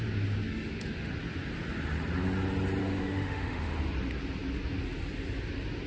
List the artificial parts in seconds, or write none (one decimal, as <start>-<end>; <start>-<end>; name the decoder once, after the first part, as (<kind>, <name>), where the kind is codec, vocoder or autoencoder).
0.5-1.1 (autoencoder, DAC-VAE); 2.8-3.8